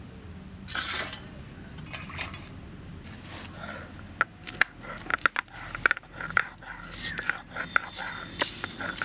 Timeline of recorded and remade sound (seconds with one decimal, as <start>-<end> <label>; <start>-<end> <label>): 0.0-9.0 recorded